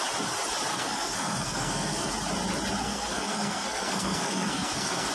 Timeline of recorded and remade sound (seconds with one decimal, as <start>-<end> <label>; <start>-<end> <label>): 0.0-0.7 recorded; 0.7-2.1 remade; 2.1-2.8 recorded; 2.8-5.1 remade